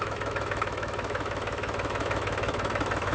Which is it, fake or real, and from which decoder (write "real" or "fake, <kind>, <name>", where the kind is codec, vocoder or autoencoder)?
fake, autoencoder, DAC-VAE